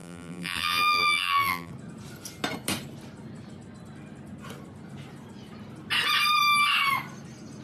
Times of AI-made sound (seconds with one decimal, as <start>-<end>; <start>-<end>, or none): 0.0-1.7